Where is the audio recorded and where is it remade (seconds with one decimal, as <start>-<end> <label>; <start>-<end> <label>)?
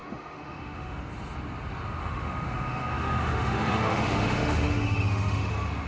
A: 0.0-1.0 remade; 1.0-2.0 recorded; 2.0-5.5 remade; 5.5-5.9 recorded